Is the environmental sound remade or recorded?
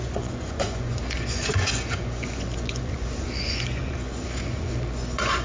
remade